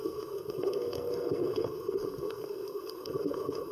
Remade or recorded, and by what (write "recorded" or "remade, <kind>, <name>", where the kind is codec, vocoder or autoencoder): remade, codec, SNAC